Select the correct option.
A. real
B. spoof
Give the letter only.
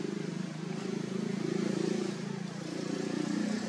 A